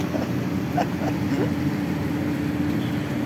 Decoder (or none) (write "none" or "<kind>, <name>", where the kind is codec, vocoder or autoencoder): none